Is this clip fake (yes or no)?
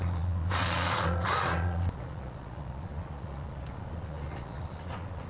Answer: yes